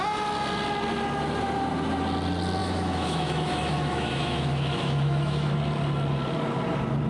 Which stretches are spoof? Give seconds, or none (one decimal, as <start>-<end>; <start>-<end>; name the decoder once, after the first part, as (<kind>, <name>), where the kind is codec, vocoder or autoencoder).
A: 2.6-5.5 (autoencoder, DAC-VAE)